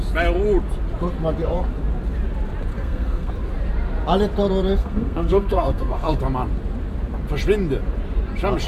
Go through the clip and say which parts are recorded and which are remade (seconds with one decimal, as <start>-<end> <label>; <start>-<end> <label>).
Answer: 0.0-2.7 recorded; 2.7-3.3 remade; 3.3-4.8 recorded; 4.8-6.2 remade; 6.2-8.7 recorded